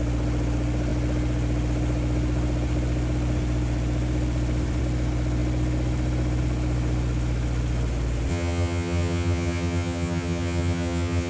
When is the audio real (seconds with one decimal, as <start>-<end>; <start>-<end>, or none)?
0.0-8.3